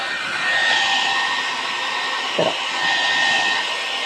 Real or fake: real